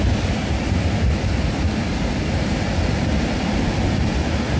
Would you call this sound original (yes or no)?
yes